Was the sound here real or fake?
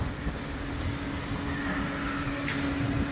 real